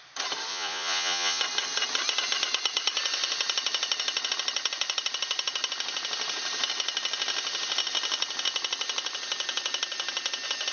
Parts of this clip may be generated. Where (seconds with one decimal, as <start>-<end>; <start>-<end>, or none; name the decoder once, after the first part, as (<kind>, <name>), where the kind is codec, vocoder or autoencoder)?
0.5-1.4 (vocoder, Vocos)